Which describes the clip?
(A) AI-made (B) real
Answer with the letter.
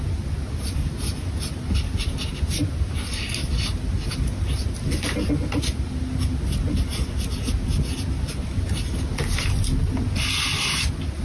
B